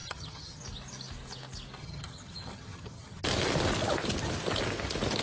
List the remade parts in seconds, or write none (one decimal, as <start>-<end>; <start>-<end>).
0.0-0.6; 1.8-3.2